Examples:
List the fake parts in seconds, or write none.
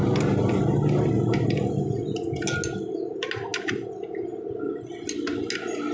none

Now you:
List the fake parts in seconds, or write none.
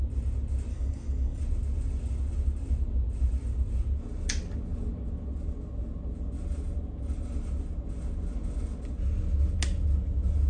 0.7-1.4 (codec, DAC)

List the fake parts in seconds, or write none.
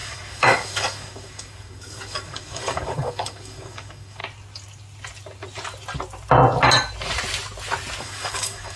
0.0-4.2 (codec, DAC); 8.0-8.8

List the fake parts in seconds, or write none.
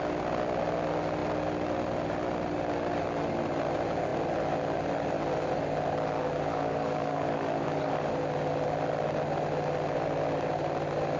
6.5-8.1 (codec, DAC)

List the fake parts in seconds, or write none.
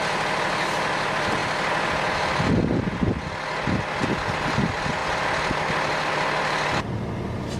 none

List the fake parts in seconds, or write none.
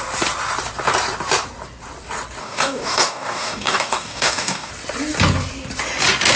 2.4-4.7 (codec, DAC)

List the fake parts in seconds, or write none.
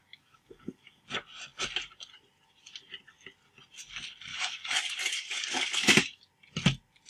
0.0-1.1 (codec, DAC); 4.3-6.2